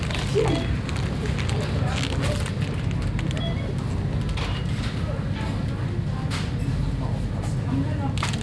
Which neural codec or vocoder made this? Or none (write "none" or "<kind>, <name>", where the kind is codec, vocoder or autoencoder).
none